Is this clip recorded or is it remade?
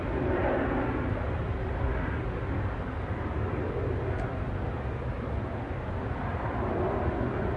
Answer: recorded